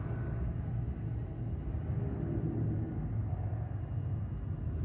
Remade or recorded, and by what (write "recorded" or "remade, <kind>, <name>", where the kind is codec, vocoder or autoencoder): recorded